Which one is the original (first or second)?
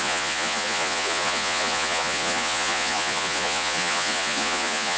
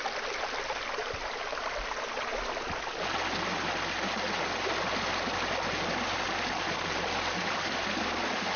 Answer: second